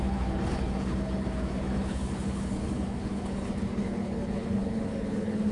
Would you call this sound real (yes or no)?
no